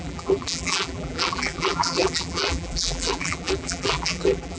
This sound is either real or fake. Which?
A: fake